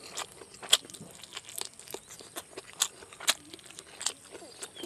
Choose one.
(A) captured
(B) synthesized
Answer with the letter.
A